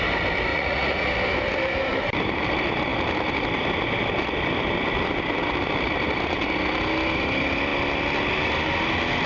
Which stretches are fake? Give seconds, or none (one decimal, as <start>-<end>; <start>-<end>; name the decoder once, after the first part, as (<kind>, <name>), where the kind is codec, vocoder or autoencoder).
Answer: 0.5-1.1 (vocoder, Vocos)